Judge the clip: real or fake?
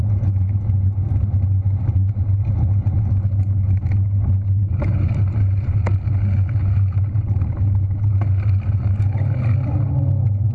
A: real